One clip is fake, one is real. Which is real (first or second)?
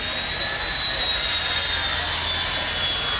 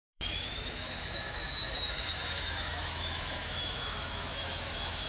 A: first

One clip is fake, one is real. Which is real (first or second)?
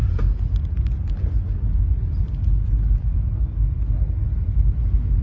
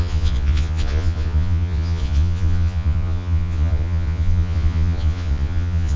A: first